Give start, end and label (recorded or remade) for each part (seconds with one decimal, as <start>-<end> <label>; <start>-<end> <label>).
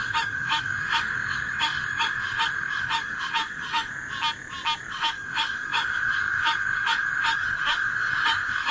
0.0-3.9 remade; 3.9-4.9 recorded; 4.9-8.7 remade